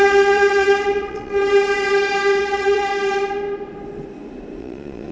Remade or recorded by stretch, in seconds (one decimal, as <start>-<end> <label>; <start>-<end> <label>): 0.0-1.4 remade; 1.4-2.4 recorded; 2.4-2.9 remade; 2.9-4.6 recorded; 4.6-5.1 remade

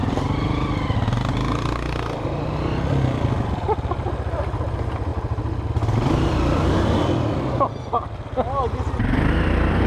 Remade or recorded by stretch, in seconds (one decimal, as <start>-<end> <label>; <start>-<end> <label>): 0.0-9.9 recorded

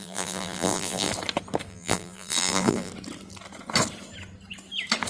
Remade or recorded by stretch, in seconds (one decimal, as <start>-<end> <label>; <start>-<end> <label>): 0.0-1.1 remade; 1.1-1.7 recorded; 1.7-2.9 remade; 2.9-5.1 recorded

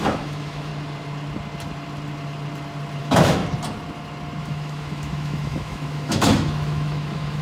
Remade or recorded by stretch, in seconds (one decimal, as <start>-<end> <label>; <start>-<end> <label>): 0.0-0.7 remade; 0.7-3.0 recorded; 3.0-3.4 remade; 3.4-4.4 recorded; 4.4-7.4 remade

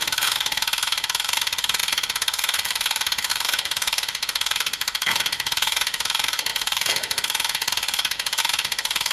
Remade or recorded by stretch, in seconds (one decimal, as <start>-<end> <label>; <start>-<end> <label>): 0.0-9.1 remade

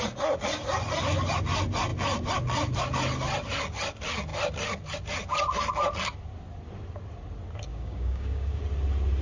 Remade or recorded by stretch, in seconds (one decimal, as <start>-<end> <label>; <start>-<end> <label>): 0.0-7.7 recorded; 7.7-8.6 remade; 8.6-9.2 recorded